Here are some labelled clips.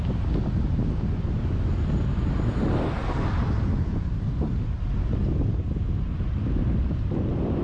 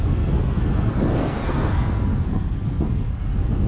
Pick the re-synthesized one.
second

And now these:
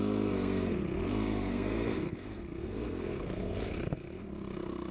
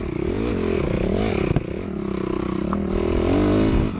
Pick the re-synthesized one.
first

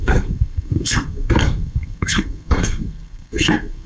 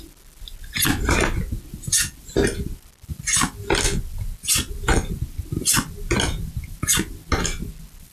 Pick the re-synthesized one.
first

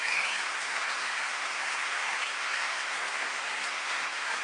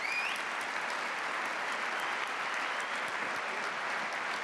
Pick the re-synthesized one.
first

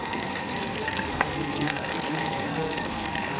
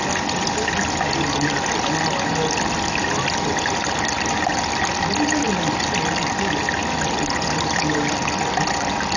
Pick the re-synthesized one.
first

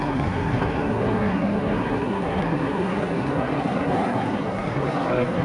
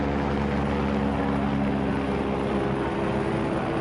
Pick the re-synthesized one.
first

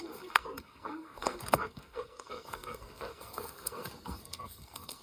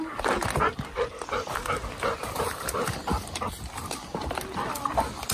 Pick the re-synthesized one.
first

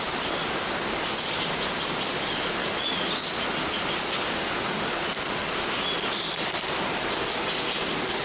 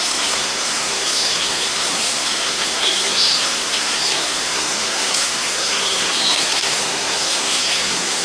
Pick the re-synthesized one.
second